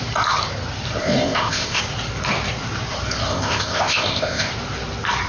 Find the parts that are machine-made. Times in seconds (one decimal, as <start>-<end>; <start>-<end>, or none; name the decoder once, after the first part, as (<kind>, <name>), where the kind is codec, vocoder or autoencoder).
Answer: 1.0-1.8 (codec, ZipCodec); 3.3-4.5